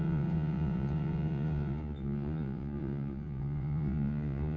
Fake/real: fake